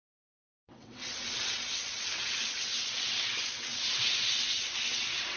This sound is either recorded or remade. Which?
remade